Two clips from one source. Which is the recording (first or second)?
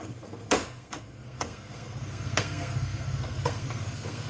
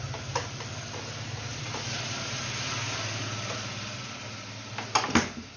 second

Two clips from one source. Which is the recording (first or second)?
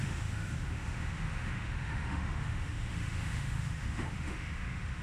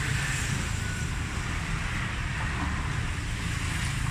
second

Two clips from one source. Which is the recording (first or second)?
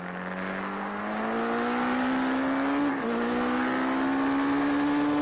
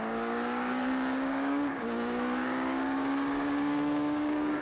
first